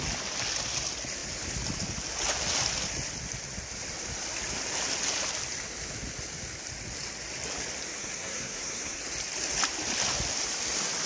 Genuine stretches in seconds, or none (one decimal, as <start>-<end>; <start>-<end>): 0.0-8.0; 9.0-11.1